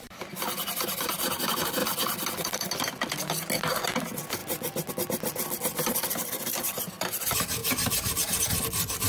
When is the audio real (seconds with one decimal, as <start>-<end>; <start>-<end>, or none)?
1.8-3.8; 4.4-4.9